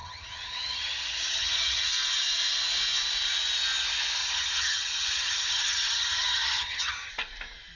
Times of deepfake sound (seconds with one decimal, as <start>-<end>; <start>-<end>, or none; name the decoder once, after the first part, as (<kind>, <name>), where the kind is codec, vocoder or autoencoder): 0.0-1.9 (vocoder, HiFi-GAN); 4.2-7.1